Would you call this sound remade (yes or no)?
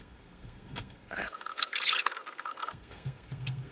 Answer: yes